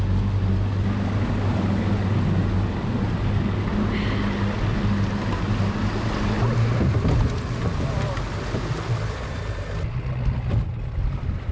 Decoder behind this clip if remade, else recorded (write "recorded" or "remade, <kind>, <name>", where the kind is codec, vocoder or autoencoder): recorded